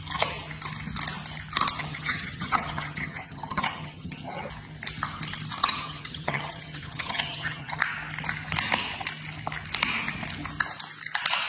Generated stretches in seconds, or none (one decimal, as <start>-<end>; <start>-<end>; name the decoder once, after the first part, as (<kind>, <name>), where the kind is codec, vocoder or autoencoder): 1.8-4.5 (vocoder, HiFi-GAN); 5.6-7.8